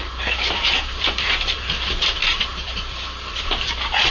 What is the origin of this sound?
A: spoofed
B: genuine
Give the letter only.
A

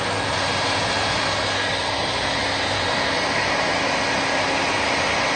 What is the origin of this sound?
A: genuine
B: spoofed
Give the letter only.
A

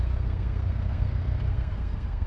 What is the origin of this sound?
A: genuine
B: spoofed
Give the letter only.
B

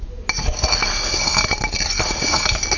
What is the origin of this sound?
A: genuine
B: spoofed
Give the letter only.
A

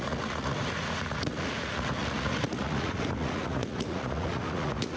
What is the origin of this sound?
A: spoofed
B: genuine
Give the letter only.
A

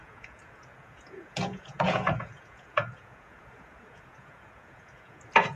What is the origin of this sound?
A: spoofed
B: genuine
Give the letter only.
A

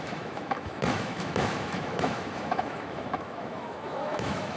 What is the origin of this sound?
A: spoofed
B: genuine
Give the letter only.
A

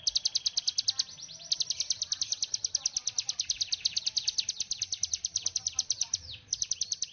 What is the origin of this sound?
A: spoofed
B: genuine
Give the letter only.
B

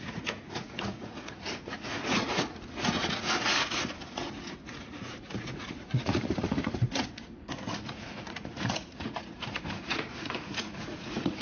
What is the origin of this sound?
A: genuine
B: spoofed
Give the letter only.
B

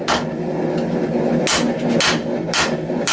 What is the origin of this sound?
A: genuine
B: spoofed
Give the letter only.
A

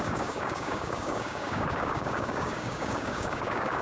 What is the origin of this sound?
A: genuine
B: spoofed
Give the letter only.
B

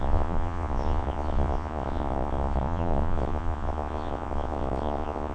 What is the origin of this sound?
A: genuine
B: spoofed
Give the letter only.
B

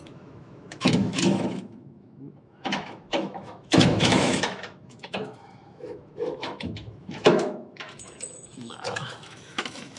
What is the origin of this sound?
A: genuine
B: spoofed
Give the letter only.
B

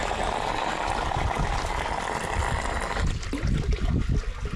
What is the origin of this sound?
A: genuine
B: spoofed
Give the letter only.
A